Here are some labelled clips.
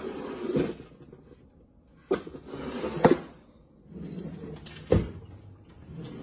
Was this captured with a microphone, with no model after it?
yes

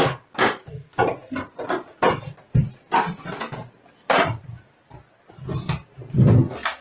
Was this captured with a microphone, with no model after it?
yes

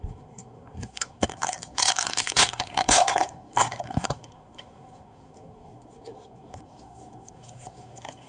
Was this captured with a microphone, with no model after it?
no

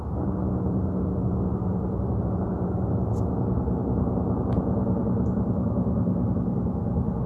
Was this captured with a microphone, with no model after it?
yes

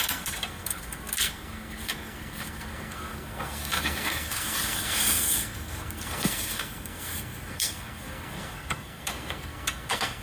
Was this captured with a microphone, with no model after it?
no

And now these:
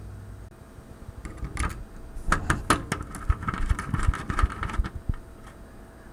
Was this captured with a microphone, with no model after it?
yes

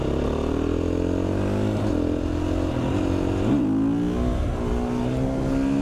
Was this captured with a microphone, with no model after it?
yes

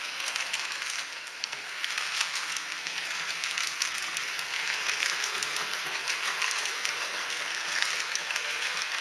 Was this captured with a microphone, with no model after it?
no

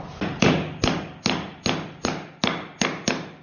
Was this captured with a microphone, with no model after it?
yes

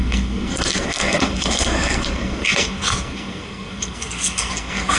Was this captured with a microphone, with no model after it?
no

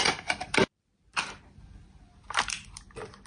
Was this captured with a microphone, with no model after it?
yes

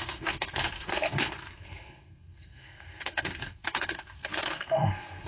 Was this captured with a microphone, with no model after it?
no